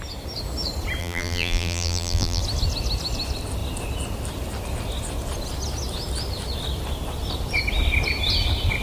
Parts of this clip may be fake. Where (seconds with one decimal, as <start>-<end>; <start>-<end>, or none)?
1.0-2.4